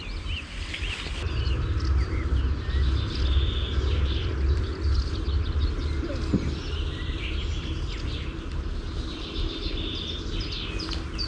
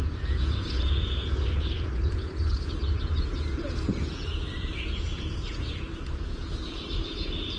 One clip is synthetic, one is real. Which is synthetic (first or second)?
second